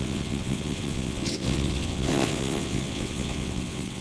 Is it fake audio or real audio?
fake